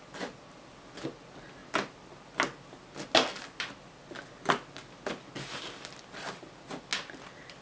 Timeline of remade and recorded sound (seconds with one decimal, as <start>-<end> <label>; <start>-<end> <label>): 0.0-7.6 recorded